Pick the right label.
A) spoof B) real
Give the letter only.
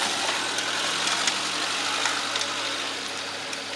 B